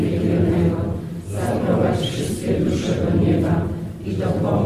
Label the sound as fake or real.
fake